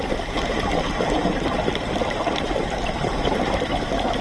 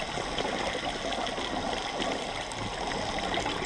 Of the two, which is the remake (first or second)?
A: first